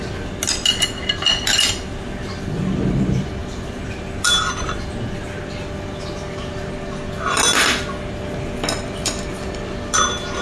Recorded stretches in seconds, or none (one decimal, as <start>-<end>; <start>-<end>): 0.0-10.4

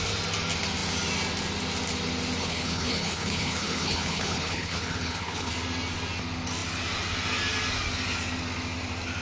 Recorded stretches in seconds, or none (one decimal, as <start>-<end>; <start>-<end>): 0.0-2.4; 5.5-9.2

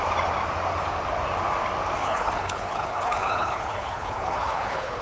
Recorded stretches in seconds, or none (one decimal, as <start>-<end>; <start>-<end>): 0.0-2.0

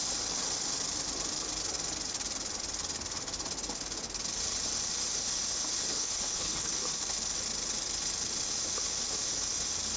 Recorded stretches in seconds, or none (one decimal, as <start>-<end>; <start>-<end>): 0.0-5.9; 6.7-10.0

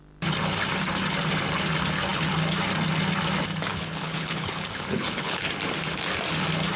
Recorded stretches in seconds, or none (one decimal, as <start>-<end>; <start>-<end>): 0.0-3.7; 5.5-6.8

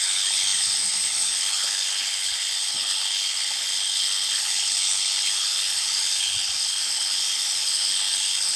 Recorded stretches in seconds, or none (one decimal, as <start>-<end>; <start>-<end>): none

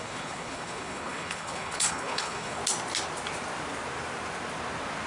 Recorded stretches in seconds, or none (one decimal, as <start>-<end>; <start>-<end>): 2.6-5.1